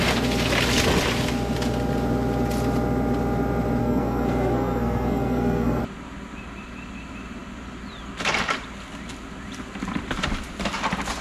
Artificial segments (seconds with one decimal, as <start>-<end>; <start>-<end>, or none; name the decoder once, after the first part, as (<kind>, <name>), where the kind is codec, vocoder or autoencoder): 3.8-5.8 (codec, SNAC)